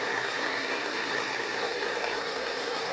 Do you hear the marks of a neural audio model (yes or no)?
yes